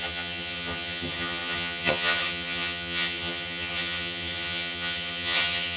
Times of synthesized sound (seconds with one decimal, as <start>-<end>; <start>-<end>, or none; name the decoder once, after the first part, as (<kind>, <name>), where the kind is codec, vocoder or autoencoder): 0.0-5.8 (vocoder, HiFi-GAN)